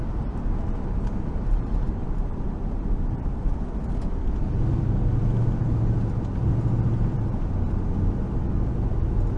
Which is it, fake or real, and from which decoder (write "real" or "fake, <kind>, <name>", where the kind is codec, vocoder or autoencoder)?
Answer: real